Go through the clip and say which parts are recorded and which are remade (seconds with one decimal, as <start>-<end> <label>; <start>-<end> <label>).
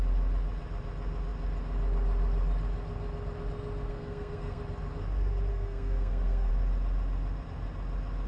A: 0.0-3.9 recorded; 3.9-4.6 remade; 4.6-5.5 recorded; 5.5-6.5 remade; 6.5-8.3 recorded